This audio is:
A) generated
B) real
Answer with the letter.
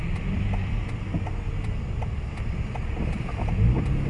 B